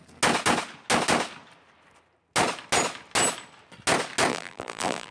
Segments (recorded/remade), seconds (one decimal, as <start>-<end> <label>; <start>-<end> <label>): 0.0-4.3 recorded; 4.3-5.1 remade